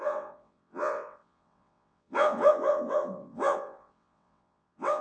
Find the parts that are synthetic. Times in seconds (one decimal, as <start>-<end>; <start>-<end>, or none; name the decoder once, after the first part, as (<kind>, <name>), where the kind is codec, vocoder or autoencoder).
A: 0.0-5.0 (vocoder, WaveNeXt)